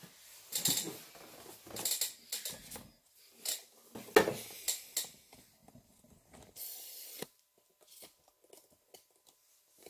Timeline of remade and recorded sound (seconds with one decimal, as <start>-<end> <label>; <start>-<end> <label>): 0.0-9.9 recorded